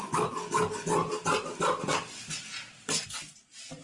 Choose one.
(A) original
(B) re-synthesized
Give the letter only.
A